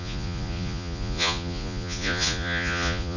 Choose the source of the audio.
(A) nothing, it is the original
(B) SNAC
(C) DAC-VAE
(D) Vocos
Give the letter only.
D